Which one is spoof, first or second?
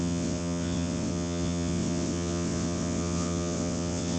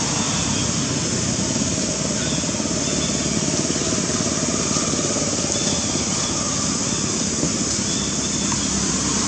first